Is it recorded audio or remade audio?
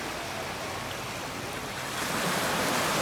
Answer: recorded